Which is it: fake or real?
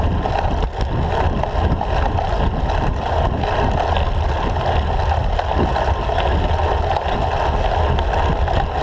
real